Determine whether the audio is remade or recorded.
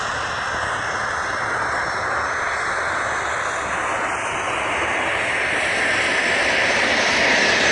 recorded